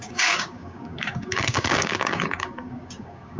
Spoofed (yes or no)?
yes